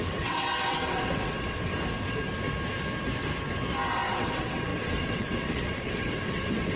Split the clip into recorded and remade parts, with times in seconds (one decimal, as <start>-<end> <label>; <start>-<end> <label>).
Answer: 0.0-1.7 remade; 1.7-4.1 recorded; 4.1-6.8 remade